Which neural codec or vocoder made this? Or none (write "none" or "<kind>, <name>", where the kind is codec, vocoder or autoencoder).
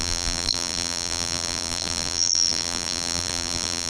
vocoder, BigVGAN v2